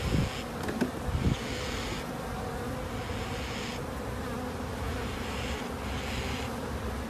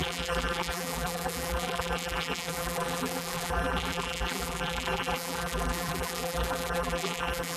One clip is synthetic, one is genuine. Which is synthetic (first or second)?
second